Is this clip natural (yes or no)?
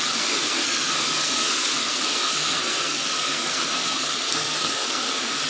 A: no